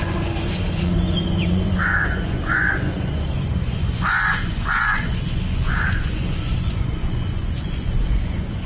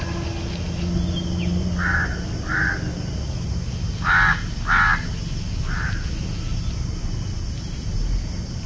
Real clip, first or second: second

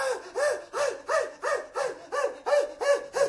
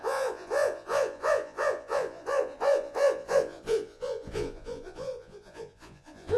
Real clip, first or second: first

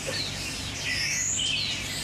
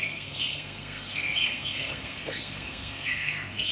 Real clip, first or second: first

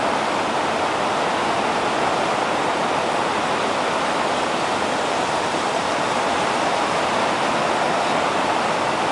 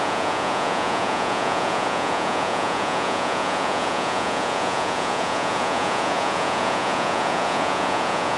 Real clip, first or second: first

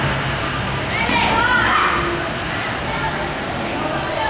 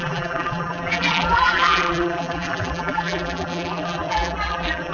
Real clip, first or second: first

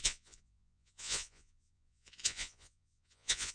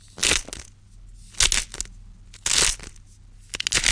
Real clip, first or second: second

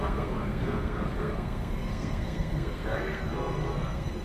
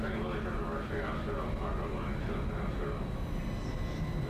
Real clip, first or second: second